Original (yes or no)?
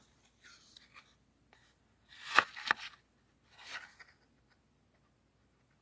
yes